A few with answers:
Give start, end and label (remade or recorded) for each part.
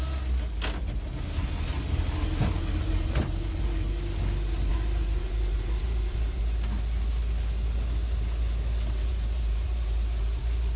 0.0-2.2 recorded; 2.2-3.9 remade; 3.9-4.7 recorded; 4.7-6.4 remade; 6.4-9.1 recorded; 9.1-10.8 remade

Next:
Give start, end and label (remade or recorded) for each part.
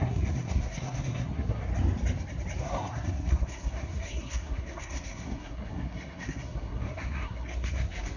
0.0-1.7 remade; 1.7-2.6 recorded; 2.6-8.2 remade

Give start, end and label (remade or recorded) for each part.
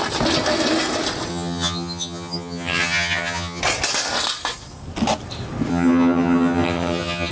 0.0-1.3 recorded; 1.3-3.6 remade; 3.6-5.7 recorded; 5.7-7.3 remade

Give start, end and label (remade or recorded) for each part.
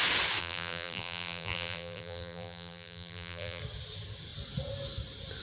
0.0-0.4 recorded; 0.4-3.6 remade; 3.6-5.4 recorded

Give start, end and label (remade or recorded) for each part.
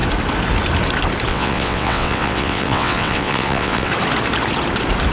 0.0-1.3 recorded; 1.3-3.9 remade; 3.9-5.1 recorded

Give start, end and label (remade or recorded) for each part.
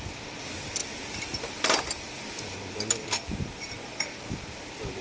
0.0-5.0 recorded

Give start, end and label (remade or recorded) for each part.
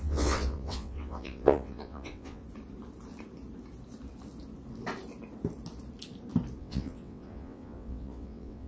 0.0-2.4 remade; 2.4-6.6 recorded; 6.6-8.7 remade